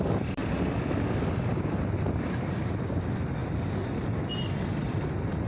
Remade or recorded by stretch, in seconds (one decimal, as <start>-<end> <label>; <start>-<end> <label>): 0.0-0.4 remade; 0.4-2.2 recorded; 2.2-3.4 remade; 3.4-4.6 recorded; 4.6-5.5 remade